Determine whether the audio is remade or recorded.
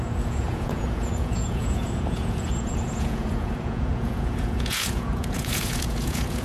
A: remade